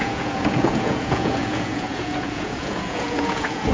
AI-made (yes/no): yes